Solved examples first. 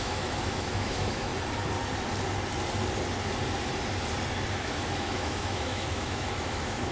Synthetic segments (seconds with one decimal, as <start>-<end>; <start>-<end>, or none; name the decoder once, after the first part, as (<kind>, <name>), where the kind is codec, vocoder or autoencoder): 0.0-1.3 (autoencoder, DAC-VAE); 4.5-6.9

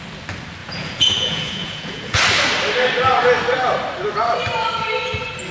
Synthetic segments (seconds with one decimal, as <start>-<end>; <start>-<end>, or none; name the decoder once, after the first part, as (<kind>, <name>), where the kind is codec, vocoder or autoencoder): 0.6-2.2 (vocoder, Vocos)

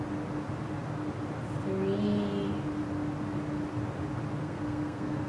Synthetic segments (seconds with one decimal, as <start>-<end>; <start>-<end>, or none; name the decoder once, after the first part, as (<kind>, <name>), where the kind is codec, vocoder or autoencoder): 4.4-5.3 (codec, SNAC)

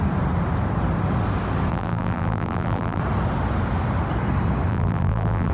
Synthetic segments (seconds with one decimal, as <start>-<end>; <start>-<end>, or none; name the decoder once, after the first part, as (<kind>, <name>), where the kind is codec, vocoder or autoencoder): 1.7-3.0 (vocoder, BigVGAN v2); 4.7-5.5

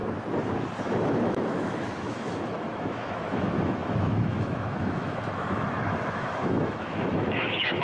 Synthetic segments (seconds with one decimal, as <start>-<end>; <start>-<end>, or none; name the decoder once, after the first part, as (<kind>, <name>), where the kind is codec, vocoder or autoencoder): 0.8-7.8 (autoencoder, DAC-VAE)

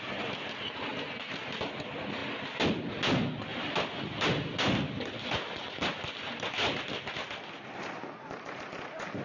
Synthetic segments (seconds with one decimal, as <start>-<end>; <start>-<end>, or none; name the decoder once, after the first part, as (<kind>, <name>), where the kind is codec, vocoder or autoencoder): none